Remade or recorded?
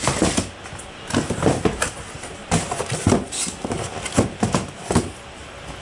recorded